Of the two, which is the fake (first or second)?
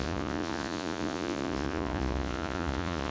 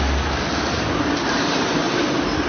first